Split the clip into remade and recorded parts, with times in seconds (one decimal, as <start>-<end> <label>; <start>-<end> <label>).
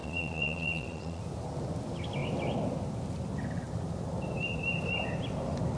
0.0-1.2 remade; 1.2-5.8 recorded